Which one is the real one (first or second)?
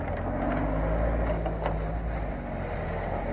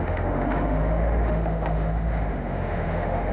first